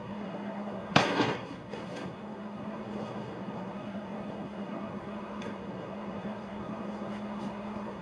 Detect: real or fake fake